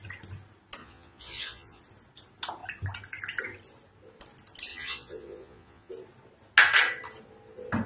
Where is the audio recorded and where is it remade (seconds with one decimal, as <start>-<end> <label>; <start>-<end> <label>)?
0.0-0.8 recorded; 0.8-1.8 remade; 1.8-4.7 recorded; 4.7-5.9 remade; 5.9-7.9 recorded